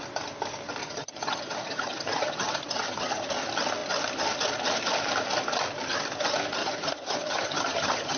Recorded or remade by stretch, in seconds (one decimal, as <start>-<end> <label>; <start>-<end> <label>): 0.0-0.8 recorded; 0.8-3.3 remade; 3.3-6.6 recorded; 6.6-8.2 remade

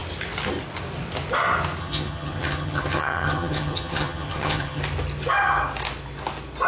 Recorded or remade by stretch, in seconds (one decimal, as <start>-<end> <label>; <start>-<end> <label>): 0.0-1.8 recorded; 1.8-4.8 remade; 4.8-6.7 recorded

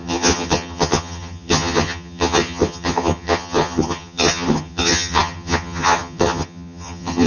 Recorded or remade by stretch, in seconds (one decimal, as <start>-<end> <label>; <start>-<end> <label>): 0.0-7.3 remade

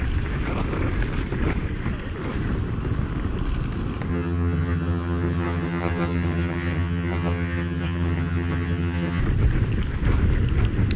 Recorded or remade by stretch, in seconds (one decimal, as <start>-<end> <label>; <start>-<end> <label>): 0.0-4.1 recorded; 4.1-9.2 remade; 9.2-11.0 recorded

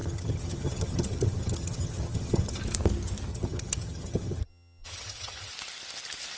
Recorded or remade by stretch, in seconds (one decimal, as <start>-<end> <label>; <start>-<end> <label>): 0.0-2.6 remade; 2.6-3.3 recorded; 3.3-5.5 remade; 5.5-6.4 recorded

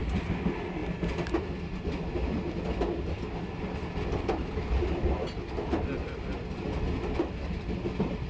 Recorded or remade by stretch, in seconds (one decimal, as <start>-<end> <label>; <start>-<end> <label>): 0.0-8.3 recorded